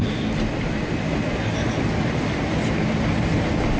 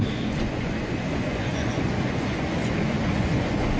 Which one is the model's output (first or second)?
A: second